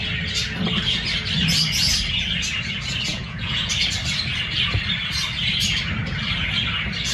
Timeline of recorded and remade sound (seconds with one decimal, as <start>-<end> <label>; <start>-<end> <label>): 0.0-3.1 recorded; 3.1-3.7 remade; 3.7-7.1 recorded